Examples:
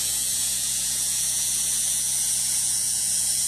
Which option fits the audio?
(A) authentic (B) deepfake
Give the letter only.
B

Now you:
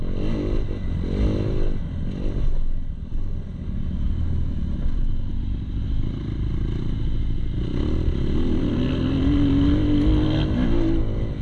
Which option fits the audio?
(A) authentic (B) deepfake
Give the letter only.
A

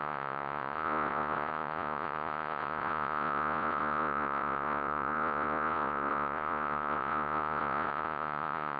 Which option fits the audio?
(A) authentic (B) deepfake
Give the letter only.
B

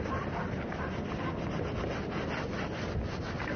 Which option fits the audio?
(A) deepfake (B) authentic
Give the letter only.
B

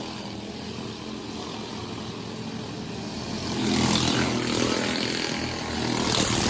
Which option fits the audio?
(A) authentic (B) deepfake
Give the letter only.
A